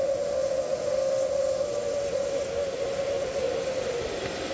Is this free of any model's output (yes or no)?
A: yes